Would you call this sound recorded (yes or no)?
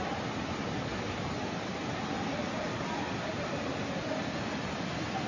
yes